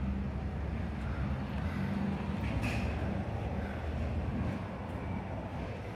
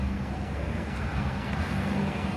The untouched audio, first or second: first